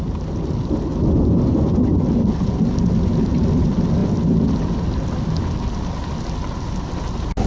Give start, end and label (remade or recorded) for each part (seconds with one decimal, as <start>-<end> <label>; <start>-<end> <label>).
0.0-7.5 recorded